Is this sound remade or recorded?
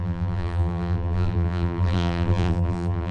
remade